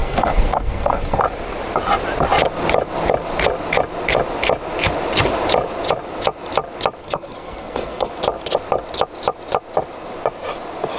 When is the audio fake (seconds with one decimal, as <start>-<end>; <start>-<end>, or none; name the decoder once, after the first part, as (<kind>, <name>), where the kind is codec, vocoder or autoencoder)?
0.0-1.2 (codec, SNAC); 7.0-8.1